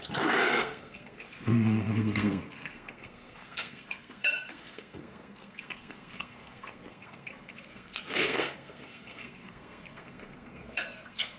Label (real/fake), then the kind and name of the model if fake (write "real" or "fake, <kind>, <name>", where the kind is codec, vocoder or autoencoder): fake, codec, SNAC